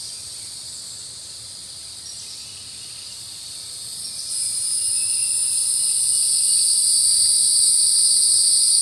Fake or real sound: fake